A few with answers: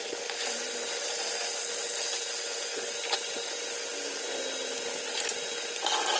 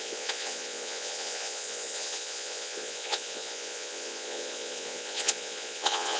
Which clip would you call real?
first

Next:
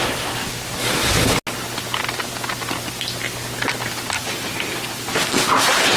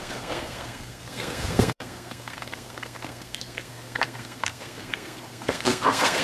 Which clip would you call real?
first